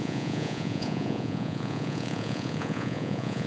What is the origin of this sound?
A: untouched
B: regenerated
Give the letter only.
B